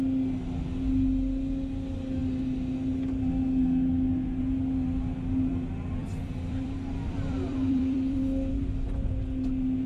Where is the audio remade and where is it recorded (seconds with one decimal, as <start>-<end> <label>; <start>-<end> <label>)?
0.0-6.0 recorded; 6.0-8.2 remade; 8.2-9.9 recorded